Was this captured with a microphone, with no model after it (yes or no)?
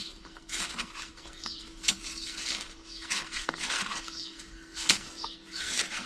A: no